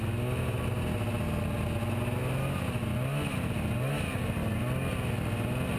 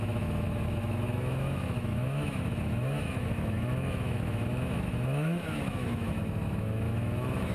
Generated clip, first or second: second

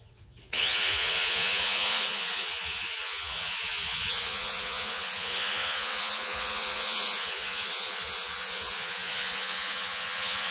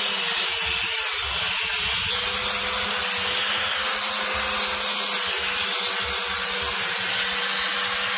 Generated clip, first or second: first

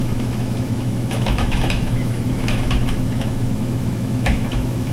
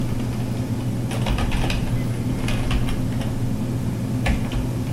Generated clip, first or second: first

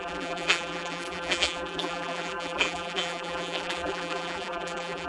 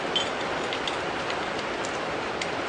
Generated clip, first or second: first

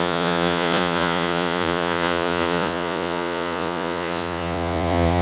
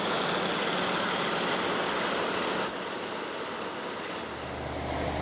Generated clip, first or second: first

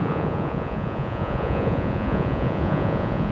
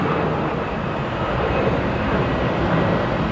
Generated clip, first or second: first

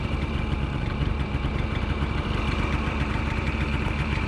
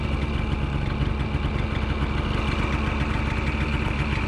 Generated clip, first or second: first